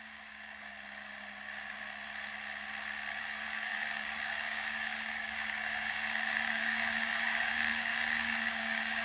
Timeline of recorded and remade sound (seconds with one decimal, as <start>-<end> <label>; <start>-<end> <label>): 0.0-0.7 remade; 0.7-3.2 recorded; 3.2-9.0 remade